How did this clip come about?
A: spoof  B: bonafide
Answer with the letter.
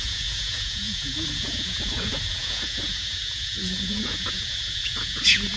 A